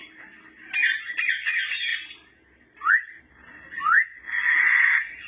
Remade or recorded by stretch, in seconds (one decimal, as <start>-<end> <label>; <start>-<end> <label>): 0.0-1.9 recorded; 1.9-3.2 remade; 3.2-4.1 recorded; 4.1-5.3 remade